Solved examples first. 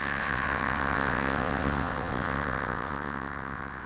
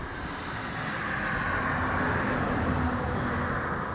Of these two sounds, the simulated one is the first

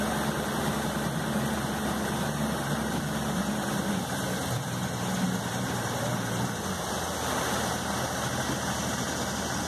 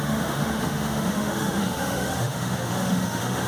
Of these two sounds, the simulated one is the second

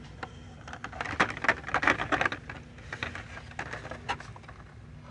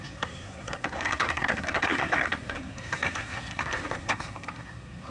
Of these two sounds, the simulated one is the second